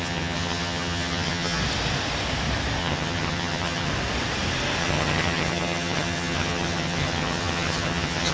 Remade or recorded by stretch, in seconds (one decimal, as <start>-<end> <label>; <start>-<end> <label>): 0.0-1.6 remade; 1.6-2.8 recorded; 2.8-3.9 remade; 3.9-4.8 recorded; 4.8-8.3 remade